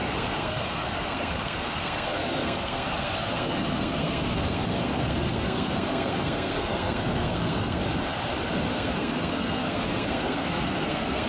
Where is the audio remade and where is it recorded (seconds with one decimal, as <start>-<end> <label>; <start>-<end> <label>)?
0.0-7.8 remade; 7.8-8.7 recorded; 8.7-11.3 remade